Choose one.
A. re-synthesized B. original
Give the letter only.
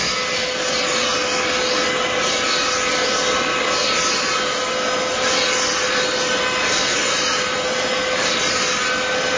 B